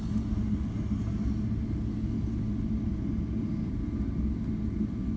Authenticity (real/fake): real